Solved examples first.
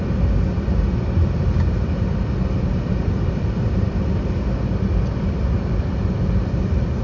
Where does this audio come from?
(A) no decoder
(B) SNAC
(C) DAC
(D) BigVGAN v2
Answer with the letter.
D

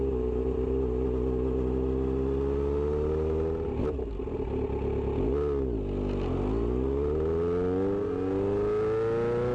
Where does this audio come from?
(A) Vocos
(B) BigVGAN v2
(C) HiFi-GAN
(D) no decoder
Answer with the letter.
D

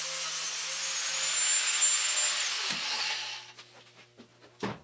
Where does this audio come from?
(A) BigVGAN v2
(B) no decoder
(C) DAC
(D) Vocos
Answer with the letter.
B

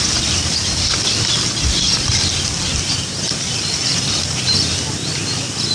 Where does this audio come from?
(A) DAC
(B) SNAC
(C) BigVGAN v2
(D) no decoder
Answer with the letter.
D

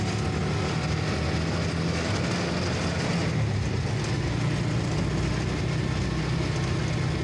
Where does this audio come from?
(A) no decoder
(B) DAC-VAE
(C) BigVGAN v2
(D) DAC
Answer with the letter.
A